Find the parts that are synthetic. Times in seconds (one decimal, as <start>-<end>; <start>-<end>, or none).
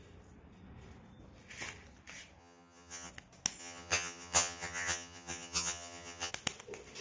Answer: 2.4-3.1; 3.6-6.3